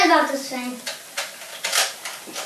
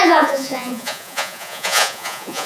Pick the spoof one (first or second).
second